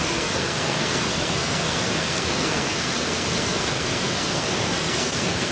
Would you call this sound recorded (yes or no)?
no